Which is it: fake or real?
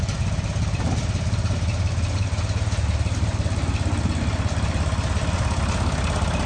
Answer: real